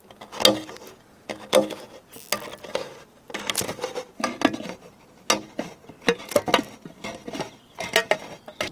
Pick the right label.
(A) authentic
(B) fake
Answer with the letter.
A